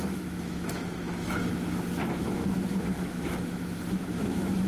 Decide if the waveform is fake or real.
fake